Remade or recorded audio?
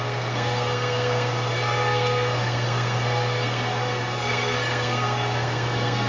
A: remade